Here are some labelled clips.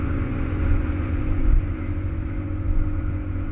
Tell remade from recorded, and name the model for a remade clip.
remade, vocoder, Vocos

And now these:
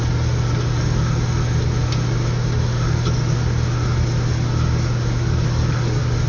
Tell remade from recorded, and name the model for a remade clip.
recorded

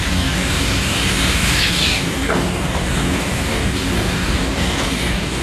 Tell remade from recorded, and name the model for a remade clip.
remade, codec, DAC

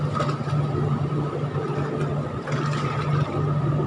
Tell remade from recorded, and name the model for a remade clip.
recorded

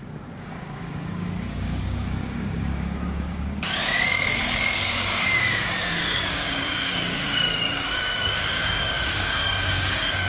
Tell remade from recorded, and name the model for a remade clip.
remade, codec, DAC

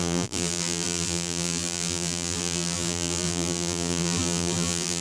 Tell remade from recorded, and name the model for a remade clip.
remade, vocoder, BigVGAN v2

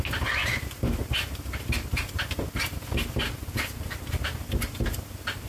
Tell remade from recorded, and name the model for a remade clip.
recorded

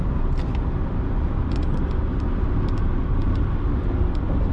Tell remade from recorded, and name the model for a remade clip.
recorded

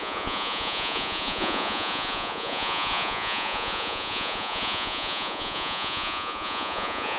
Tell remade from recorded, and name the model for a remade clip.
remade, vocoder, Vocos